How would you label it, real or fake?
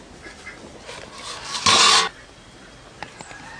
real